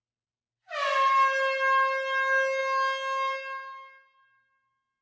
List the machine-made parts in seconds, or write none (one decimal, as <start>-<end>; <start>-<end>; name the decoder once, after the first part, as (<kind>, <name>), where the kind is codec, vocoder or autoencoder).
none